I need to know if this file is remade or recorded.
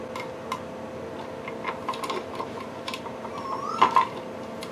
recorded